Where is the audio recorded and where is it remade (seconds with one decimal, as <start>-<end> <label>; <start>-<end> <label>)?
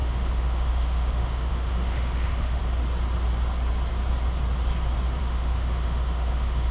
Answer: 0.0-2.6 remade; 2.6-5.2 recorded; 5.2-6.7 remade